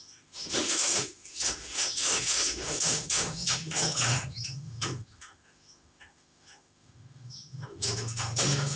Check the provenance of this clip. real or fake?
fake